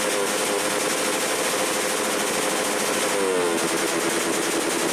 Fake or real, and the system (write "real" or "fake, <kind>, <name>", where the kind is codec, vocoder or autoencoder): real